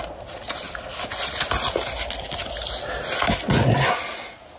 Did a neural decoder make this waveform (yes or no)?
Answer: no